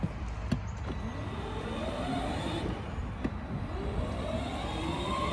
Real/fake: real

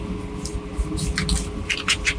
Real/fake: real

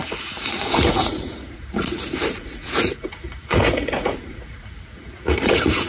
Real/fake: fake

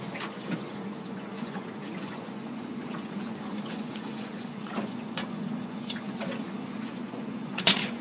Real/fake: fake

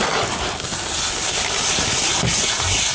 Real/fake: real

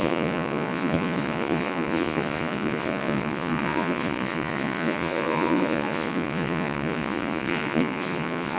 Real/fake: fake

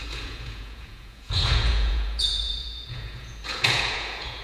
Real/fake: fake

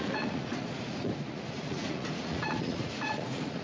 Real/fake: fake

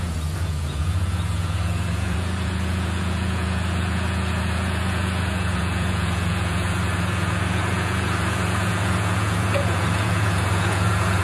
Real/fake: fake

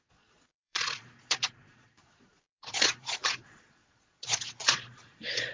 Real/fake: fake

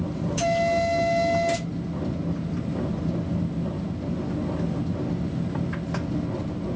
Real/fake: real